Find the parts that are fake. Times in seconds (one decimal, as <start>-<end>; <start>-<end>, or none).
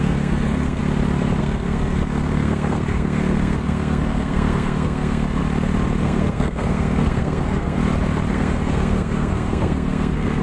0.0-0.8; 1.4-5.4; 6.0-7.8; 8.3-10.4